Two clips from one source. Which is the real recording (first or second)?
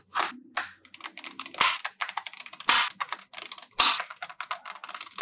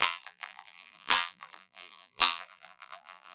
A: first